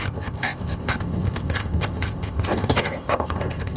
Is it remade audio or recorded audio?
remade